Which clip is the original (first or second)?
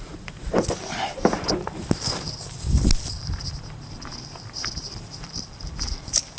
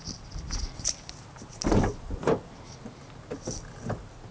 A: second